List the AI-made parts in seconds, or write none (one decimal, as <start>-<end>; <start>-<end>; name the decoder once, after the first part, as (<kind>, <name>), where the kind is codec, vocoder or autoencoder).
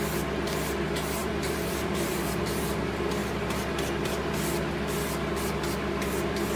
1.2-2.7 (vocoder, BigVGAN v2)